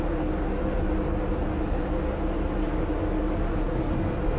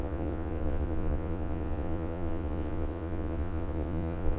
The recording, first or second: first